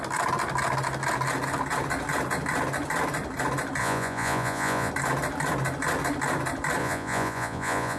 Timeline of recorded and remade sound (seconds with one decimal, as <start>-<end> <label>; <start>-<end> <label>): 0.0-3.8 recorded; 3.8-4.9 remade; 4.9-6.8 recorded; 6.8-8.0 remade

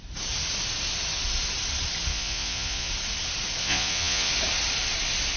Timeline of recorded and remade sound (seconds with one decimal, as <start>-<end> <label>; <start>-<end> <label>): 0.0-2.1 recorded; 2.1-2.9 remade; 2.9-3.6 recorded; 3.6-4.3 remade; 4.3-5.4 recorded

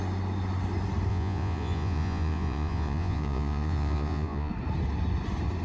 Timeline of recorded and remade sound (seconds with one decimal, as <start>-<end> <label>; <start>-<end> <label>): 0.0-1.1 recorded; 1.1-4.5 remade; 4.5-5.6 recorded

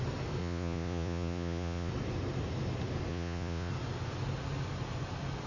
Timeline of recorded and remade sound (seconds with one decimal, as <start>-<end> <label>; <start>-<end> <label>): 0.0-0.4 recorded; 0.4-1.9 remade; 1.9-3.1 recorded; 3.1-3.7 remade; 3.7-5.5 recorded

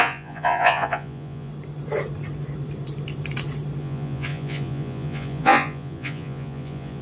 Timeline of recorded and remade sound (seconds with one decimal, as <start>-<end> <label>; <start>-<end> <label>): 0.0-1.5 remade; 1.5-3.8 recorded; 3.8-7.0 remade

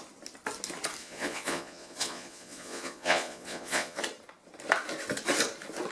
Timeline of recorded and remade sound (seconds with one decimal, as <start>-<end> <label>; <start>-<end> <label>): 0.0-1.0 recorded; 1.0-4.0 remade; 4.0-5.9 recorded

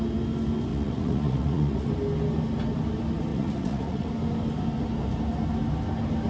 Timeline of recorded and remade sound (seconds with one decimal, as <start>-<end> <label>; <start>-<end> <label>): 0.0-0.7 recorded; 0.7-1.9 remade; 1.9-3.3 recorded; 3.3-4.1 remade; 4.1-6.3 recorded

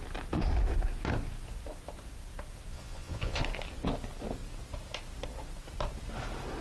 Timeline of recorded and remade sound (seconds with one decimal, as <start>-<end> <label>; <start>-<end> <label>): 0.0-2.7 recorded; 2.7-3.4 remade; 3.4-6.6 recorded